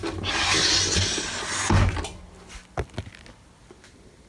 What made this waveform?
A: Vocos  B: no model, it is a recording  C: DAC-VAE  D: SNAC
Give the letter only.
B